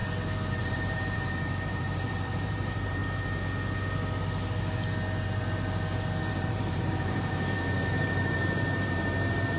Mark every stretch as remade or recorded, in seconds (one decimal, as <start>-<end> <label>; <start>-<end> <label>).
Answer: 0.0-0.6 recorded; 0.6-3.0 remade; 3.0-6.3 recorded; 6.3-9.6 remade